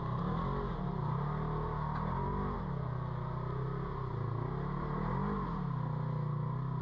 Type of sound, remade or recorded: recorded